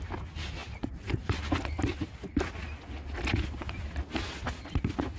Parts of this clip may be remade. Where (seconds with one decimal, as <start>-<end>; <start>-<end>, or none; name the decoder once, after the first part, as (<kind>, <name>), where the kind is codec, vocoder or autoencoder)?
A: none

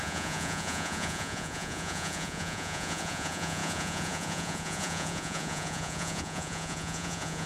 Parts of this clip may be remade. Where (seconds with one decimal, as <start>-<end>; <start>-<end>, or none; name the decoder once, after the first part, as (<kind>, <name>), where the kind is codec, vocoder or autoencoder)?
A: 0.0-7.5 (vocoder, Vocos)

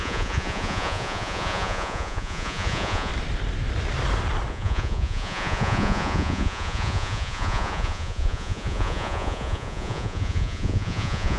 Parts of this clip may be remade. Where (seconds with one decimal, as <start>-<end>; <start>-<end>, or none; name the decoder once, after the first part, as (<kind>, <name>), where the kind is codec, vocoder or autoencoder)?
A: 0.0-3.1 (vocoder, Vocos); 4.5-11.4

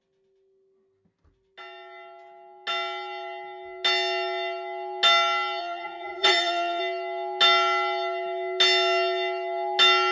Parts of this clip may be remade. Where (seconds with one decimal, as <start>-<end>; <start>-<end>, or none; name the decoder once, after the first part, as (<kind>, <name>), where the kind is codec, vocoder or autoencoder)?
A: 5.6-6.8 (vocoder, Vocos)